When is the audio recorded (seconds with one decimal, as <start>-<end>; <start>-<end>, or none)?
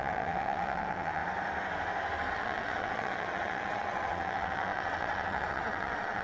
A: 1.2-2.3